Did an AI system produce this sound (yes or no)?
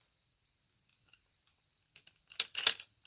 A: no